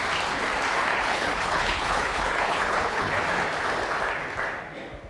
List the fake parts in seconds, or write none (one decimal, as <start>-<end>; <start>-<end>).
0.9-3.2